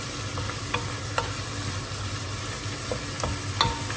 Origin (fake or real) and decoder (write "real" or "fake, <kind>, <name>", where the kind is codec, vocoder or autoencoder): real